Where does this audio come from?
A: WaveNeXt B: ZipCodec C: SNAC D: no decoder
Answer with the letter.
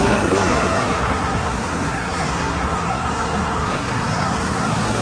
C